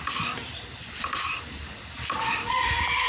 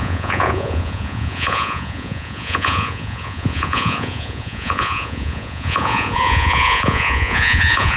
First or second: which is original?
first